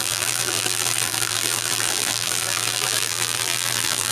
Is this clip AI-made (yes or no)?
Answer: yes